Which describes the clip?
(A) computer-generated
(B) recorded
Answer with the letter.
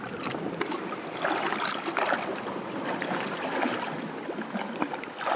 B